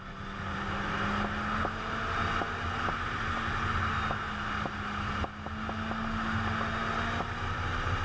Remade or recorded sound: recorded